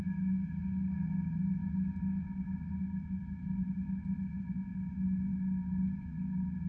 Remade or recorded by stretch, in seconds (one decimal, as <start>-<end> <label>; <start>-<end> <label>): 0.0-6.7 recorded